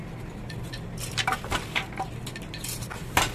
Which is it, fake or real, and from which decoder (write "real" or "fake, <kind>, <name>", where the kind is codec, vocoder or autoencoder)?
real